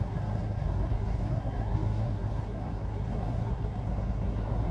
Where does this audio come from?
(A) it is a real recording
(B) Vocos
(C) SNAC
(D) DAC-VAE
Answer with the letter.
C